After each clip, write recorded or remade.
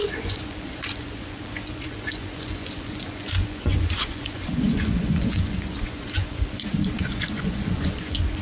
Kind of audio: remade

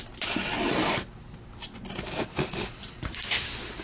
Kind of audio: recorded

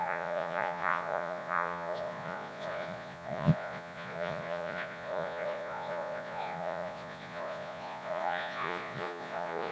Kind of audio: remade